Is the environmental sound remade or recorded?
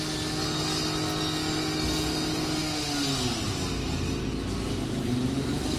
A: recorded